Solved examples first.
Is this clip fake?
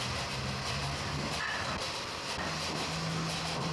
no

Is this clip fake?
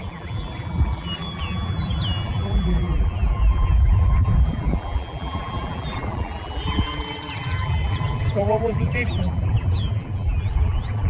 yes